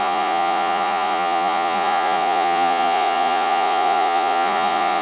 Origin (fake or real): fake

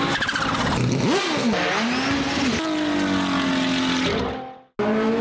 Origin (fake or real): real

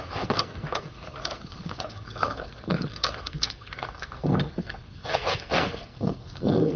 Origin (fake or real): fake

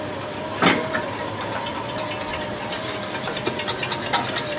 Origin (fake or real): real